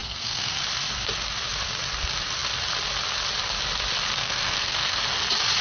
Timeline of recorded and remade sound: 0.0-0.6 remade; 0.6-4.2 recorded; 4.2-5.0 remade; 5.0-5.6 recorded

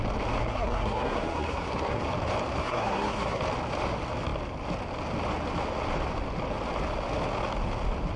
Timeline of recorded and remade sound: 0.0-0.4 recorded; 0.4-2.0 remade; 2.0-2.6 recorded; 2.6-3.4 remade; 3.4-8.2 recorded

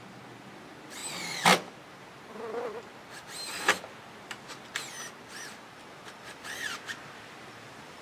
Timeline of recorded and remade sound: 0.0-8.0 recorded

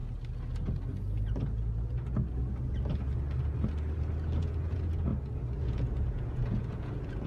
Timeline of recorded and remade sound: 0.0-4.4 recorded; 4.4-5.1 remade; 5.1-5.6 recorded; 5.6-7.3 remade